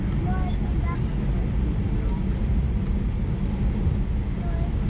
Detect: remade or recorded recorded